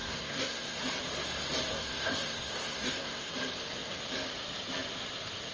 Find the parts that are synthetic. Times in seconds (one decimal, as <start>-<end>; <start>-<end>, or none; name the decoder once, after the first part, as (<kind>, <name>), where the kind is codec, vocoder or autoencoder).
0.0-0.8 (codec, SNAC); 1.7-3.3